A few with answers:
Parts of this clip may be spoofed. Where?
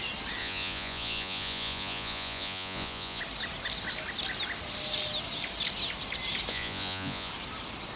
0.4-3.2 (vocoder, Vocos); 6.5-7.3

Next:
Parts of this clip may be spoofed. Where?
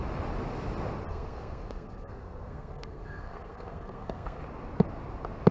1.1-4.4 (codec, SNAC)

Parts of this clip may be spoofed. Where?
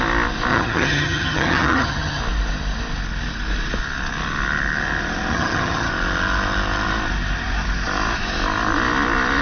0.5-2.2 (vocoder, HiFi-GAN); 5.3-5.9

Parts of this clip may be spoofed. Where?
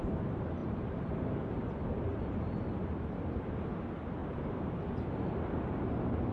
0.6-1.1 (vocoder, BigVGAN v2); 2.1-3.6; 4.2-5.2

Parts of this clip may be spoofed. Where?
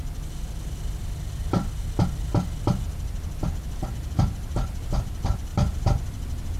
none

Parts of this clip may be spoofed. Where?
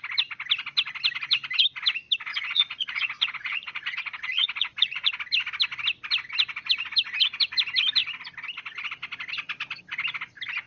2.3-5.1 (vocoder, Vocos)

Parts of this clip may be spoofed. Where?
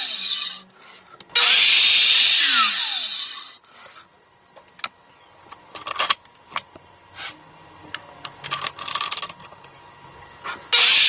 none